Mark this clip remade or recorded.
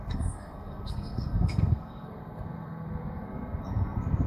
remade